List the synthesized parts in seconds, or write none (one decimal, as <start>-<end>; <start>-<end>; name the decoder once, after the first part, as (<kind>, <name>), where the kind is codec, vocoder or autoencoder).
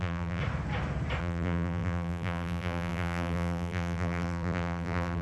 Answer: 0.0-0.4 (vocoder, BigVGAN v2); 1.2-5.2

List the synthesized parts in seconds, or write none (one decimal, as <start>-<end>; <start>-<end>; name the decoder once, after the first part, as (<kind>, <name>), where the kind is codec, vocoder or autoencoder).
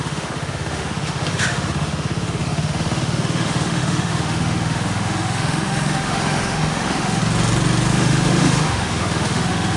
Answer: 0.0-7.2 (autoencoder, DAC-VAE); 7.9-9.8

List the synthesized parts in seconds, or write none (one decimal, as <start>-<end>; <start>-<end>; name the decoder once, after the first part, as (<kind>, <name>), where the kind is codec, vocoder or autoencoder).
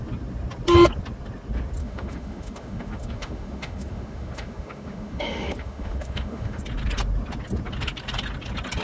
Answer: 1.8-6.6 (autoencoder, DAC-VAE)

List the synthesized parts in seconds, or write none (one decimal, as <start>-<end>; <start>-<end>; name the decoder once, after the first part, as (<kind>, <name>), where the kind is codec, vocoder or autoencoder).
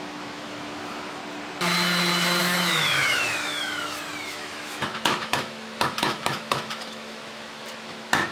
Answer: 0.0-1.2 (autoencoder, DAC-VAE); 2.4-3.7; 4.3-8.3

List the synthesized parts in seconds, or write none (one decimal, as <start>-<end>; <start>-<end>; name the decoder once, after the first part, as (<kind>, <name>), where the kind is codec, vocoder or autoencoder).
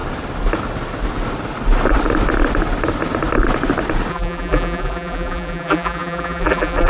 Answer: 4.1-6.9 (vocoder, BigVGAN v2)